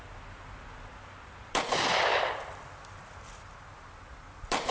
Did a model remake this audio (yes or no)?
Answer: yes